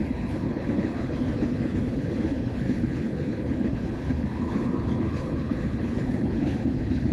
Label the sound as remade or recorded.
remade